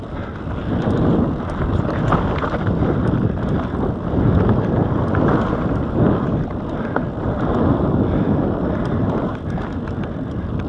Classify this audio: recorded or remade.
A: recorded